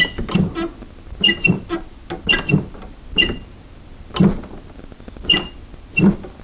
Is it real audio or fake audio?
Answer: real